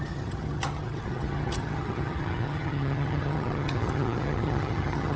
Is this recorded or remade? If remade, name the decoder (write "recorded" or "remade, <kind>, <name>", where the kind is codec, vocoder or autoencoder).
remade, vocoder, HiFi-GAN